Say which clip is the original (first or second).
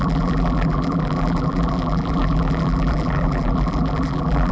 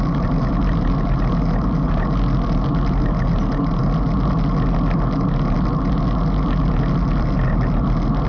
second